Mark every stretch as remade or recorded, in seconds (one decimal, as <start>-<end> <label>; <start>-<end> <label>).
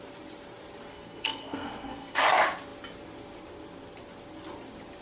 0.0-0.9 recorded; 0.9-2.2 remade; 2.2-5.0 recorded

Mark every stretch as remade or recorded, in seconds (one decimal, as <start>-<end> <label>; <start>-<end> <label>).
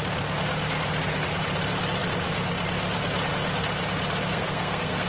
0.0-4.3 recorded; 4.3-5.1 remade